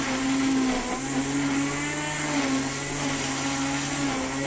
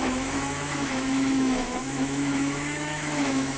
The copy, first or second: second